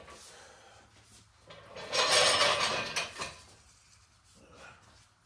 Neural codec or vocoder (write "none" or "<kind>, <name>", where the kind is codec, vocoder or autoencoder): none